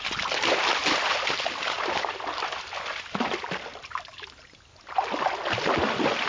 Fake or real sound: real